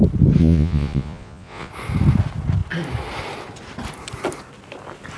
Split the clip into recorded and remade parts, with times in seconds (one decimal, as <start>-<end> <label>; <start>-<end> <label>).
0.0-0.4 recorded; 0.4-1.7 remade; 1.7-5.2 recorded